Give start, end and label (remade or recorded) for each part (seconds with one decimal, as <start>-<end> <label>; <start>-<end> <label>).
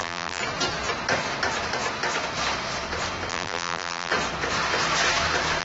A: 0.0-0.4 remade; 0.4-3.3 recorded; 3.3-4.1 remade; 4.1-5.6 recorded